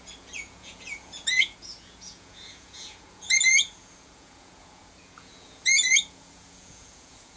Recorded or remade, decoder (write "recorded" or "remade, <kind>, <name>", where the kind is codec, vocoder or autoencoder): remade, vocoder, Vocos